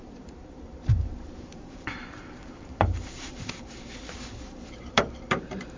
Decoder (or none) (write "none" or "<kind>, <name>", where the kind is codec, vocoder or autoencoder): vocoder, BigVGAN v2